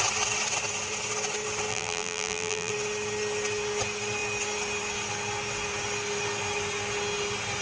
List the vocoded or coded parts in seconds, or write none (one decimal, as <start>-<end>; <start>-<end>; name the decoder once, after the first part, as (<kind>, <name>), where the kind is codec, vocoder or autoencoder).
1.7-2.7 (vocoder, BigVGAN v2)